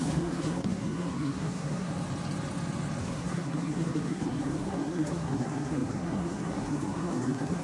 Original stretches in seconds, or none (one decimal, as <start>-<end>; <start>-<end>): 1.9-3.0